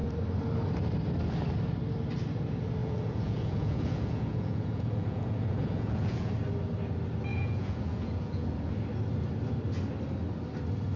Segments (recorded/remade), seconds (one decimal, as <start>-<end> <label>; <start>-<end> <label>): 0.0-2.8 recorded; 2.8-6.3 remade; 6.3-7.3 recorded; 7.3-8.7 remade; 8.7-11.0 recorded